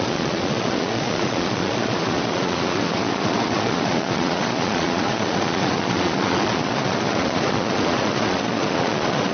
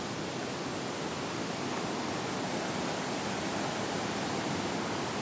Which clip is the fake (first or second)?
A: first